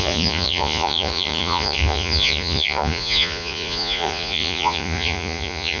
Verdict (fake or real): fake